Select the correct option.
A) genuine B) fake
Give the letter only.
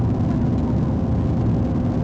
A